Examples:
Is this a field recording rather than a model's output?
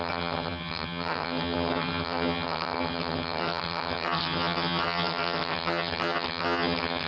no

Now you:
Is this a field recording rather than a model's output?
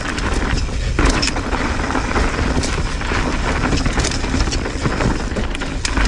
yes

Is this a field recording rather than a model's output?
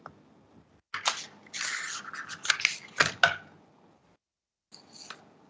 yes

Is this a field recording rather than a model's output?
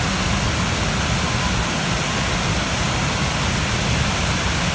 yes